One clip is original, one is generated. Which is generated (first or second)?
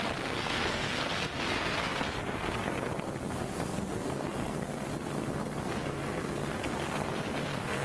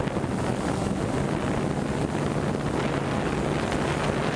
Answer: first